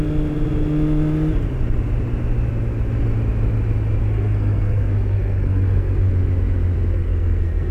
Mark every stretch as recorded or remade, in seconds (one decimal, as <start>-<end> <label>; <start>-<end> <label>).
0.0-4.0 recorded; 4.0-6.1 remade; 6.1-6.9 recorded; 6.9-7.7 remade